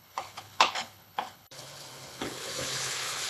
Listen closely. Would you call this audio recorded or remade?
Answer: remade